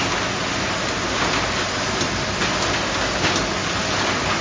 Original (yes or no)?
yes